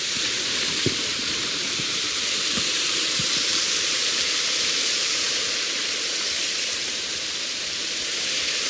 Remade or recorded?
remade